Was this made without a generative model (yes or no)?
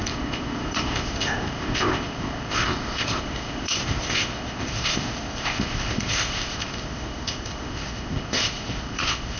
no